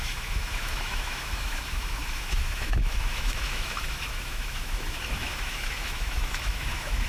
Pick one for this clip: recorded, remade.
remade